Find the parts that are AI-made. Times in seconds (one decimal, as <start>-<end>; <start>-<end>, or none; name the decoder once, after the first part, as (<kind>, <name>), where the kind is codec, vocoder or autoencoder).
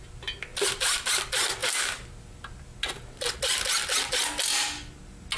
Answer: none